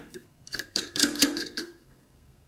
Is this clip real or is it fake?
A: fake